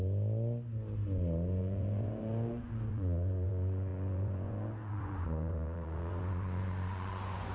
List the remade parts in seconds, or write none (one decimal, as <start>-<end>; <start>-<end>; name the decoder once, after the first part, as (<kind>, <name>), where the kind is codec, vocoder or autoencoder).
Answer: 1.6-7.5 (vocoder, Vocos)